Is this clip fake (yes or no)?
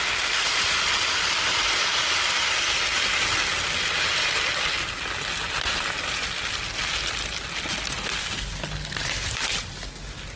no